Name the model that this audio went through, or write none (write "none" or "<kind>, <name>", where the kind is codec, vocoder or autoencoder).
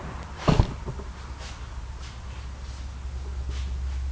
none